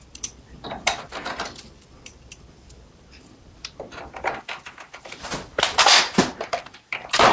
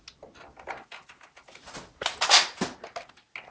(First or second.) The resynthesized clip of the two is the first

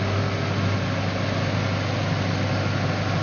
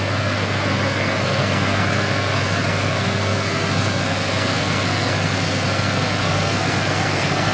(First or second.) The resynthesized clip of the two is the second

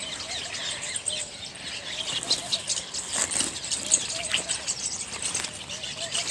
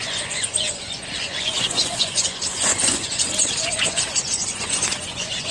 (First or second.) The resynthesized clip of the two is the second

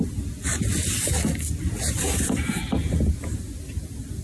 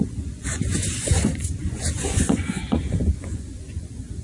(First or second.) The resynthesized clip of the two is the second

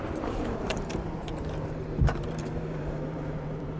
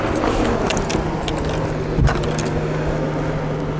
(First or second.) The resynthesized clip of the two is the first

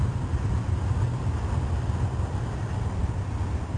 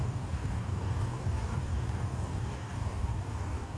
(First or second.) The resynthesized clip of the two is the second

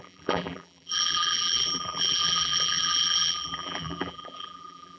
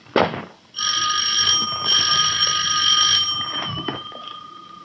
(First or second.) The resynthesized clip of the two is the first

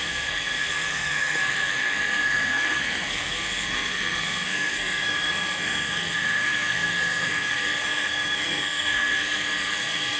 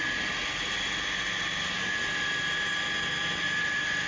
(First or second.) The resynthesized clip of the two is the first